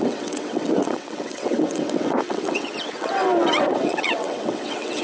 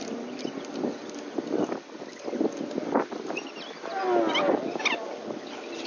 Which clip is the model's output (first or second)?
first